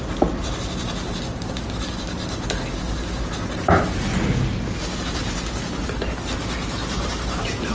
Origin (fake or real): real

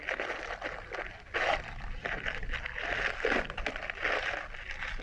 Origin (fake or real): real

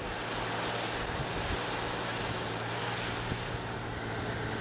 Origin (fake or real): real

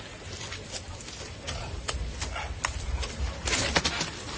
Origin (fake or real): real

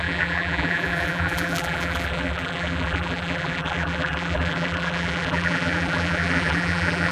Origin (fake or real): fake